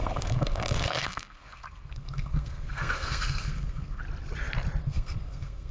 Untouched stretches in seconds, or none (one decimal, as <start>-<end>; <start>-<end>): 4.0-4.8